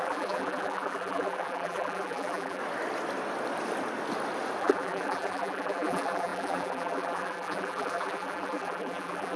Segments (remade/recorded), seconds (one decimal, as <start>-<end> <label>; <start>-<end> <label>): 0.0-2.6 remade; 2.6-4.6 recorded; 4.6-9.4 remade